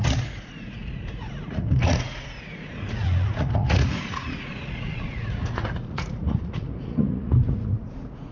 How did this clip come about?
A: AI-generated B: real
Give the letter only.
A